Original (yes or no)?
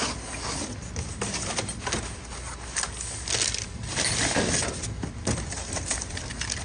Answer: yes